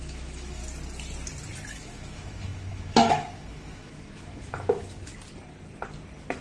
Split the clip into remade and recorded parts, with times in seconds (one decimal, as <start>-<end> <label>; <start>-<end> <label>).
0.0-0.6 remade; 0.6-1.7 recorded; 1.7-5.1 remade; 5.1-6.4 recorded